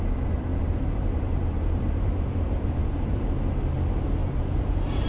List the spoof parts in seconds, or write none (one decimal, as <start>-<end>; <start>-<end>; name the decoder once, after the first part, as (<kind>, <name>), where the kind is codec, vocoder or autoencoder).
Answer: 0.5-3.3 (vocoder, BigVGAN v2); 4.2-5.1